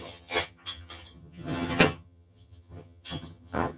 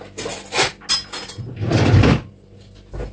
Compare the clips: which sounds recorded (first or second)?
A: second